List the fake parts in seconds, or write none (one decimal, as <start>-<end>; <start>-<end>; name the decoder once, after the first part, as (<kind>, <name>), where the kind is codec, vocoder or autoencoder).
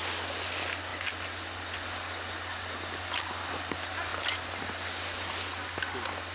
none